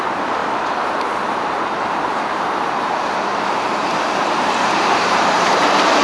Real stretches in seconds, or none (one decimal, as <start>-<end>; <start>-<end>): none